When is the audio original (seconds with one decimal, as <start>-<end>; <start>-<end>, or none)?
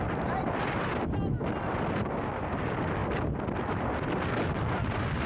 0.0-5.3